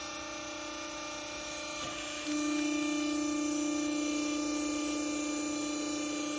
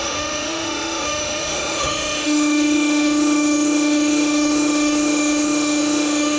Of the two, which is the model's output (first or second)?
second